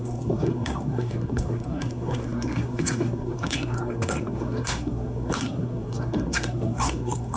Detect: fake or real fake